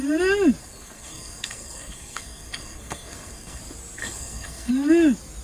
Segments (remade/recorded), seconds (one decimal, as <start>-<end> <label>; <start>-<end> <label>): 0.0-0.6 recorded; 0.6-3.6 remade; 3.6-4.0 recorded; 4.0-4.7 remade; 4.7-5.4 recorded